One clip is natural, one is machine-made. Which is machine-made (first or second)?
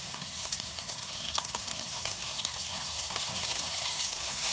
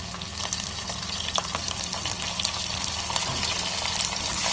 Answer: first